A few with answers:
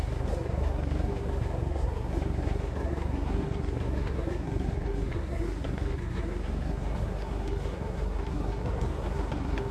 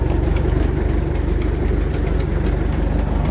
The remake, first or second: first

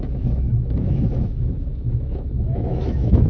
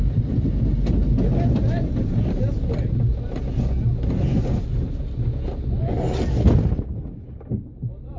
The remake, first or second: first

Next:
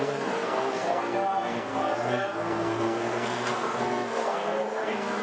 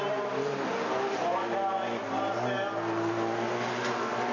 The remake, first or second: first